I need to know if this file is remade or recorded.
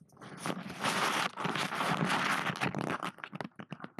recorded